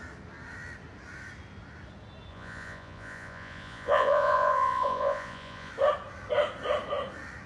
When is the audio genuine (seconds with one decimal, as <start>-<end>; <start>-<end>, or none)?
0.0-2.3; 5.7-7.5